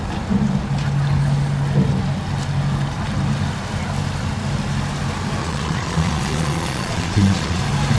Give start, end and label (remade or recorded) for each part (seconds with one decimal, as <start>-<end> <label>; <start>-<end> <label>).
0.0-5.4 recorded; 5.4-7.6 remade; 7.6-8.0 recorded